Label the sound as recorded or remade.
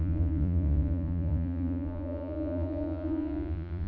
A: remade